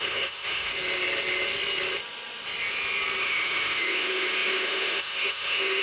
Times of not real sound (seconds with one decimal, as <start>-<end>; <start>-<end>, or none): 0.0-0.7; 3.2-5.8